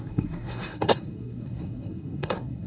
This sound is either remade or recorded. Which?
remade